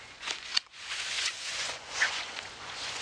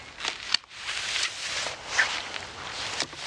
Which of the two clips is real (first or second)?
second